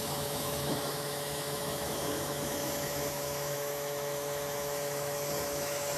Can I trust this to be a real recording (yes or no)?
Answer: no